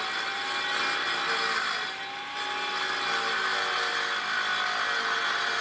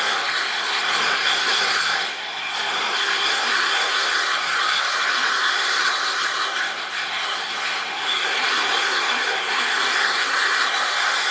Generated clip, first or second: second